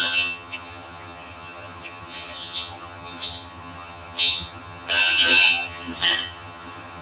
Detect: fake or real fake